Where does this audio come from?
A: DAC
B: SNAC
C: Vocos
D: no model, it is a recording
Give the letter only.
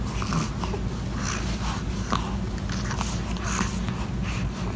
D